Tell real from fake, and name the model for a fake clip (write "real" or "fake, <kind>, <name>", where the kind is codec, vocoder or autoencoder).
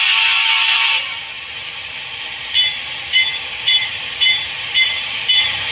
fake, vocoder, BigVGAN v2